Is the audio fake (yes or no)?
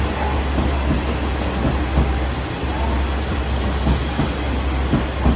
no